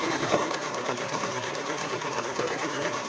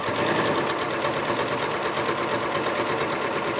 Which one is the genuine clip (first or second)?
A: second